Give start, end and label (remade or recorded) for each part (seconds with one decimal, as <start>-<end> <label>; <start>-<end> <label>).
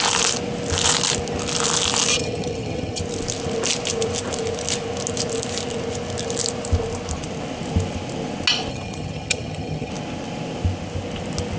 0.0-2.1 recorded; 2.1-3.0 remade; 3.0-8.7 recorded; 8.7-9.9 remade; 9.9-11.6 recorded